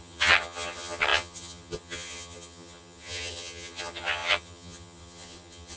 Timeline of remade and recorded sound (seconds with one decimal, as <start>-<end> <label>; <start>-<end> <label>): 0.0-5.8 remade